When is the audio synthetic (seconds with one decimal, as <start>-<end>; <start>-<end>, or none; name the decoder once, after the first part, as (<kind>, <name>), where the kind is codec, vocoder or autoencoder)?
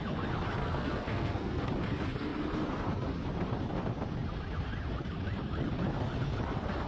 0.6-1.7 (codec, SNAC)